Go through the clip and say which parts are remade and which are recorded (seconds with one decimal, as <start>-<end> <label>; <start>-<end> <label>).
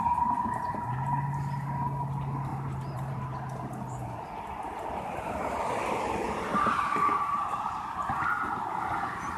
0.0-2.5 recorded; 2.5-3.1 remade; 3.1-6.5 recorded; 6.5-7.8 remade; 7.8-9.4 recorded